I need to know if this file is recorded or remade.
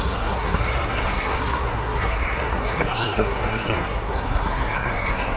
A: remade